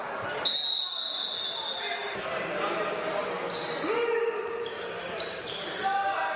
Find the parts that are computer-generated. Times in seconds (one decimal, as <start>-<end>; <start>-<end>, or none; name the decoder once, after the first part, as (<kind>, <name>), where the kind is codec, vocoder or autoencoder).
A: none